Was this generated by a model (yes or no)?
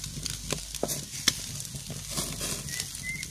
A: no